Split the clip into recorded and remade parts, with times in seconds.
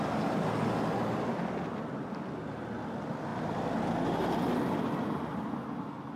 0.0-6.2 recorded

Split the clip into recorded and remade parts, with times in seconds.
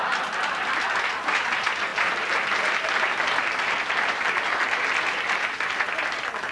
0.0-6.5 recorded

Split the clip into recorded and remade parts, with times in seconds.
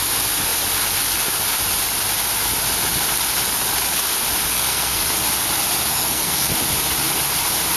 0.0-4.5 recorded; 4.5-5.1 remade; 5.1-5.9 recorded; 5.9-6.5 remade; 6.5-7.8 recorded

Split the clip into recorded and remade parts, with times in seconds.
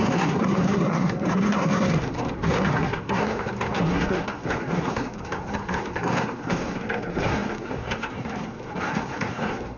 0.0-9.8 remade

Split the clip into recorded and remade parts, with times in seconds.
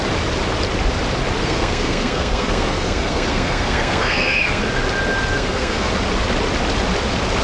0.0-1.4 recorded; 1.4-4.6 remade; 4.6-5.3 recorded; 5.3-5.9 remade; 5.9-7.4 recorded